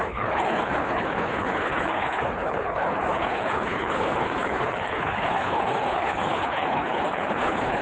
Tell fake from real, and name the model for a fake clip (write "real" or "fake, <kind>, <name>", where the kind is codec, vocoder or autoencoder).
fake, codec, HILCodec